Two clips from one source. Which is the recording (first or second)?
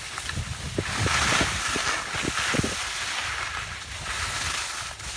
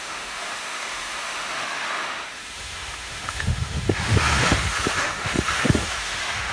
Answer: first